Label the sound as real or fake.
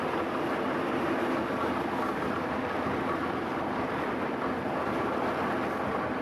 real